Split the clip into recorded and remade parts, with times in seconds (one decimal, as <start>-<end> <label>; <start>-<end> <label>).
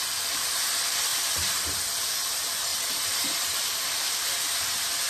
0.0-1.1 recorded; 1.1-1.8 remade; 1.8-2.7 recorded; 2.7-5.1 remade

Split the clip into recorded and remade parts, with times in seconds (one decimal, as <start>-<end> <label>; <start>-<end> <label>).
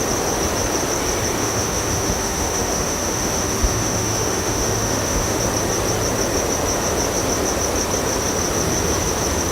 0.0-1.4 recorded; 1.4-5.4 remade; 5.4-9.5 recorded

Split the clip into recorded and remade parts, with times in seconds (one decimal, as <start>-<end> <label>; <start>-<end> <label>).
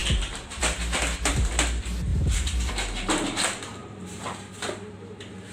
0.0-0.6 remade; 0.6-2.1 recorded; 2.1-2.7 remade; 2.7-3.8 recorded; 3.8-4.6 remade; 4.6-5.5 recorded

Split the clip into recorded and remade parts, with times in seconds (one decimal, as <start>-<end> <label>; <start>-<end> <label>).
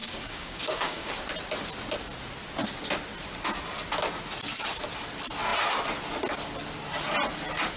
0.0-1.1 remade; 1.1-7.8 recorded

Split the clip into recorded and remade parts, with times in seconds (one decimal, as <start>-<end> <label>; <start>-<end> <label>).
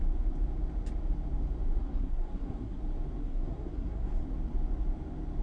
0.0-1.8 recorded; 1.8-2.8 remade; 2.8-3.2 recorded; 3.2-4.2 remade; 4.2-5.4 recorded